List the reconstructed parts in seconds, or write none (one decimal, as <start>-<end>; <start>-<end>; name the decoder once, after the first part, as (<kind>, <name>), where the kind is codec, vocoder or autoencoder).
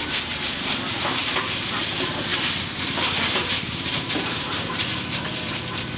1.2-1.8 (vocoder, BigVGAN v2); 2.3-4.9